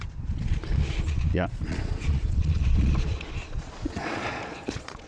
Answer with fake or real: fake